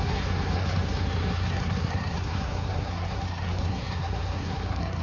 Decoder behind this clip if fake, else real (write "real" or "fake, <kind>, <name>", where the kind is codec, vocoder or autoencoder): fake, codec, SNAC